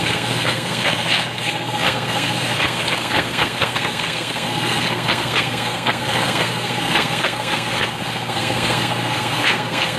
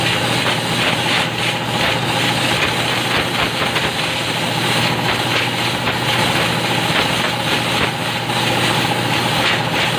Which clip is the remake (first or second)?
first